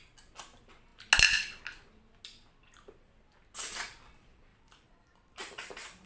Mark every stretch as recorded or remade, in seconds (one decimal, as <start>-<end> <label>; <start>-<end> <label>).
0.0-4.5 recorded; 4.5-6.1 remade